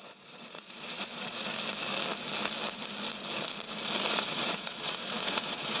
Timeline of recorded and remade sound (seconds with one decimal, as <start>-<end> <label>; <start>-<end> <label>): 0.0-1.5 remade; 1.5-4.1 recorded; 4.1-5.8 remade